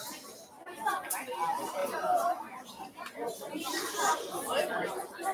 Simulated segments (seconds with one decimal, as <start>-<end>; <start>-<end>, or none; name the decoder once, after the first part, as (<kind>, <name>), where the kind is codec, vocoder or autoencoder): 1.8-4.1 (vocoder, BigVGAN v2)